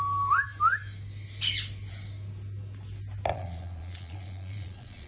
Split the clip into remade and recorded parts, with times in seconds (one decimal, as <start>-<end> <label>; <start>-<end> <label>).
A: 0.0-3.3 recorded; 3.3-5.1 remade